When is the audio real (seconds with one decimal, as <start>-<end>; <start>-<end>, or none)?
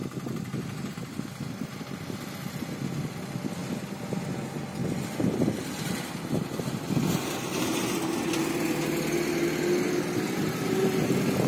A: 0.9-11.5